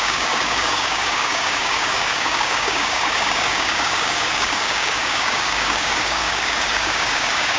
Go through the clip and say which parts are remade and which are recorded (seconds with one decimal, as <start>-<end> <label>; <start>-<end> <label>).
0.0-7.6 remade